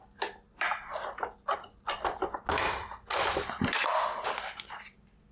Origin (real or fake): real